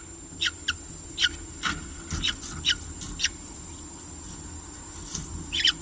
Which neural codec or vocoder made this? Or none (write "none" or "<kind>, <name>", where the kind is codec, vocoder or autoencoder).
none